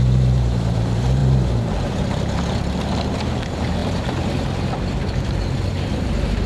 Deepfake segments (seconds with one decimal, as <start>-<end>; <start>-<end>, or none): 0.0-6.5

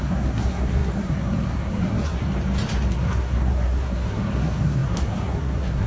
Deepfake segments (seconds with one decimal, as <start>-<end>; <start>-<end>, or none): 0.0-2.3; 2.9-5.9

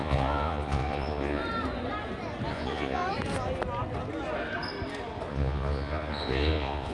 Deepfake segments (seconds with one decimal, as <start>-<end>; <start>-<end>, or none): 0.0-1.4; 2.5-3.0; 5.3-6.9